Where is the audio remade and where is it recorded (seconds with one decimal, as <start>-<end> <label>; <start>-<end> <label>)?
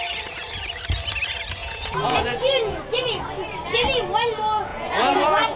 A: 0.0-1.6 recorded; 1.6-2.8 remade; 2.8-4.7 recorded; 4.7-5.6 remade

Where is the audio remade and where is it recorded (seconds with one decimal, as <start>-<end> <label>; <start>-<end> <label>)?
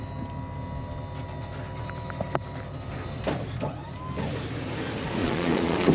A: 0.0-5.2 recorded; 5.2-5.9 remade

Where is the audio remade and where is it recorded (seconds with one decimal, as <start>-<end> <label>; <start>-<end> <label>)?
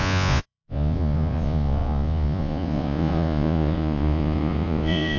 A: 0.0-5.2 remade